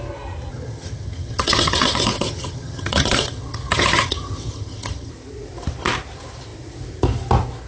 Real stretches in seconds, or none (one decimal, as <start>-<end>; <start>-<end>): 0.0-0.5; 5.1-7.7